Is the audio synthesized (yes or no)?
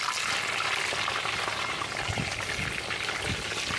no